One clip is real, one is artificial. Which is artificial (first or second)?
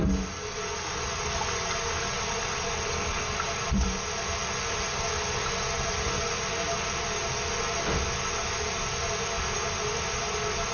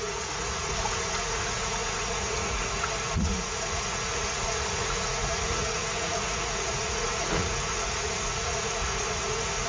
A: second